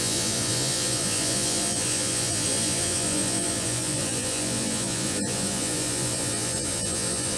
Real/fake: fake